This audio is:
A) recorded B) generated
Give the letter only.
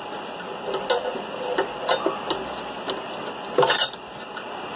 A